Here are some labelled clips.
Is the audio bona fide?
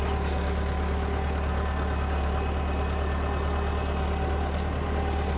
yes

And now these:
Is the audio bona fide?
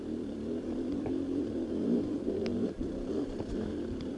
no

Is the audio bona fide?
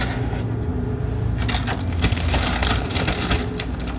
yes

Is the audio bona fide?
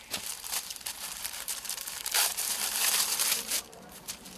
no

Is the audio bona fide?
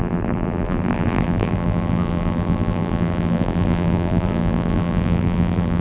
no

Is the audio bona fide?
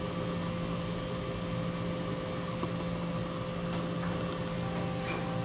yes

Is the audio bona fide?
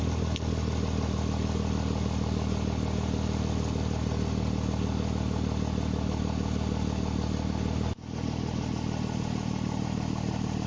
yes